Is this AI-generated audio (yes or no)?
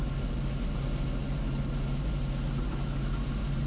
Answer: no